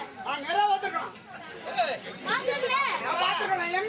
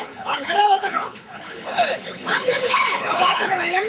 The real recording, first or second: first